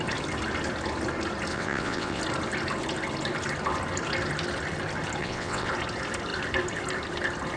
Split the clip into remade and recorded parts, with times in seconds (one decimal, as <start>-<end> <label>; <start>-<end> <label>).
0.0-1.5 recorded; 1.5-2.2 remade; 2.2-5.2 recorded; 5.2-5.7 remade; 5.7-7.6 recorded